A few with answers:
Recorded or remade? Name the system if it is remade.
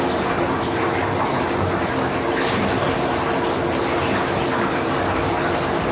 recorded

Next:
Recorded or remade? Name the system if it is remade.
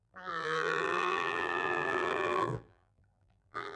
remade, vocoder, BigVGAN v2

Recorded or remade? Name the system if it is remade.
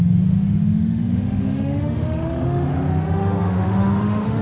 remade, autoencoder, DAC-VAE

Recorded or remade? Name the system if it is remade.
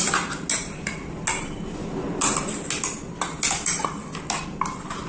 recorded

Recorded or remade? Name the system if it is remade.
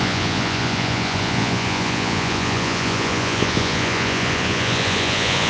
remade, vocoder, Vocos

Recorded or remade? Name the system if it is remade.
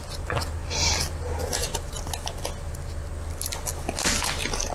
recorded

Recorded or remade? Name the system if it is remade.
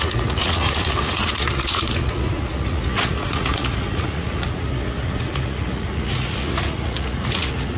remade, vocoder, Vocos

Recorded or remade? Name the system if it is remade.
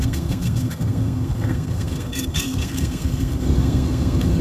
remade, codec, SNAC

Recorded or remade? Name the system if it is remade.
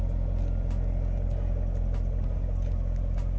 recorded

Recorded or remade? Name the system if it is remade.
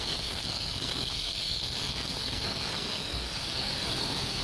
remade, codec, SNAC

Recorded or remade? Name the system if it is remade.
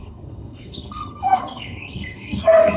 remade, codec, SNAC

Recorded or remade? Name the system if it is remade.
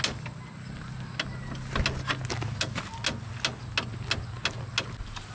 recorded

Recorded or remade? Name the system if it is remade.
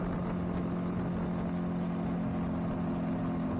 recorded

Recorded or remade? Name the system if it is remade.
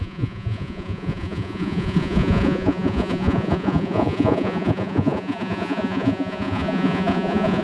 remade, vocoder, Vocos